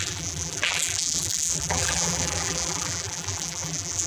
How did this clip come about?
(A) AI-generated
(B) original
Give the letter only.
A